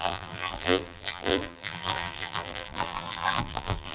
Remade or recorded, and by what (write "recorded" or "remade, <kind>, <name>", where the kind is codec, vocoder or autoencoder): remade, vocoder, BigVGAN v2